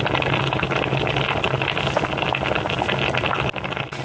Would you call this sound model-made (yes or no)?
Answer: no